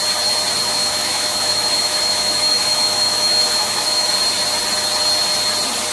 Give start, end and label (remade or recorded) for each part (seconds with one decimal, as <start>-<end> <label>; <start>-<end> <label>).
0.0-0.6 recorded; 0.6-4.1 remade; 4.1-5.9 recorded